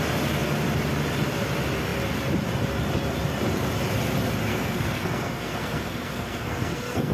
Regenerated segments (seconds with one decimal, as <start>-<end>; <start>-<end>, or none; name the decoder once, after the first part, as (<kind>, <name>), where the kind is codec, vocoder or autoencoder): 4.5-7.1 (codec, SNAC)